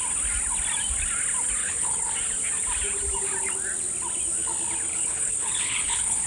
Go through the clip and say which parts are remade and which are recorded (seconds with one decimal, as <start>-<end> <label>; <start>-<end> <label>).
0.0-1.6 recorded; 1.6-2.1 remade; 2.1-4.9 recorded; 4.9-6.3 remade